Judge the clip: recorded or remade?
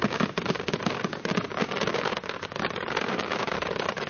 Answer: remade